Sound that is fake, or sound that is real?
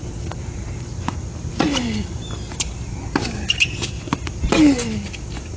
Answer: real